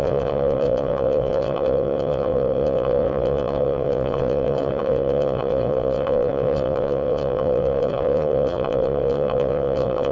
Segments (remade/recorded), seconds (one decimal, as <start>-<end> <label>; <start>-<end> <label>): 0.0-10.1 remade